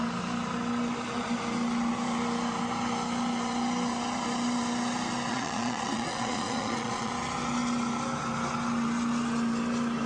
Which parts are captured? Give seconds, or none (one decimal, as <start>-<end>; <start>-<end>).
0.0-5.3; 7.1-10.1